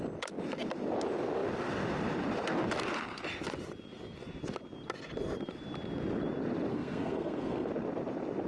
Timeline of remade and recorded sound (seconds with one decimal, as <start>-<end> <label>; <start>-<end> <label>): 0.0-6.7 recorded; 6.7-7.7 remade; 7.7-8.5 recorded